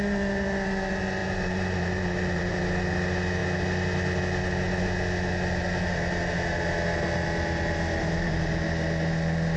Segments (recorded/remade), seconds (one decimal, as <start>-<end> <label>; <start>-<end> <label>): 0.0-1.2 recorded; 1.2-2.6 remade; 2.6-9.6 recorded